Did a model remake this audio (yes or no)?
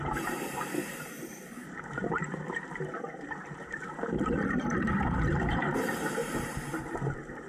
yes